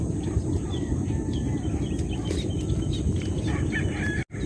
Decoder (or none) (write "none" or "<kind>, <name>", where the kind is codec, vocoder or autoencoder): none